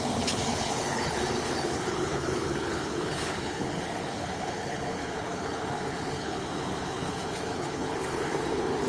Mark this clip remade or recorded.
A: remade